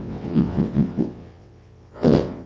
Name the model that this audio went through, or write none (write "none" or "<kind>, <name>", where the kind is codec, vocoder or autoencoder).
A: vocoder, WaveNeXt